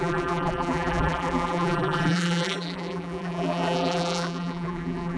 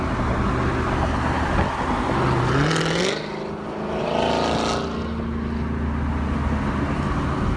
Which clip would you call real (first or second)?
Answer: second